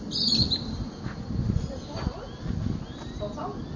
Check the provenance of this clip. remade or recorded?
recorded